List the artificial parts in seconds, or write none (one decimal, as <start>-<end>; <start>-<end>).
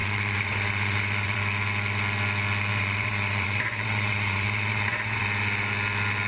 0.0-1.4; 2.7-5.2